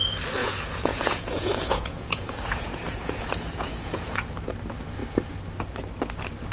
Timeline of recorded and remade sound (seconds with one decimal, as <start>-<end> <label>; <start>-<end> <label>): 0.0-0.4 recorded; 0.4-4.3 remade; 4.3-6.5 recorded